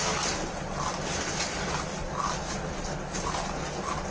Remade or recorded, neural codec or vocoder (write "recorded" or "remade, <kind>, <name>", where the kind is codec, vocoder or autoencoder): recorded